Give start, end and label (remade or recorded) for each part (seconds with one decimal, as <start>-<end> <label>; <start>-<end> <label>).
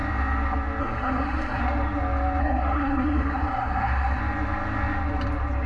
0.0-0.8 recorded; 0.8-1.6 remade; 1.6-2.4 recorded; 2.4-4.2 remade; 4.2-5.7 recorded